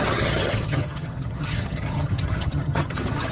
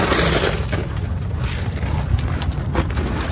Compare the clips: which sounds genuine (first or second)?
second